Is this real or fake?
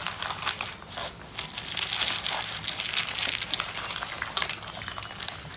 real